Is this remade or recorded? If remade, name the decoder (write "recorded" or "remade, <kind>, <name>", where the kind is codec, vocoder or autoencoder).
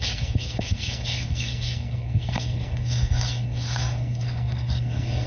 remade, codec, SNAC